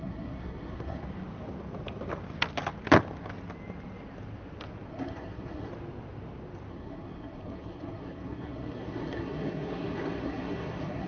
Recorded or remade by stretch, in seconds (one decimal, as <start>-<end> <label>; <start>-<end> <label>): 0.0-1.0 remade; 1.0-4.9 recorded; 4.9-5.7 remade; 5.7-6.7 recorded; 6.7-11.1 remade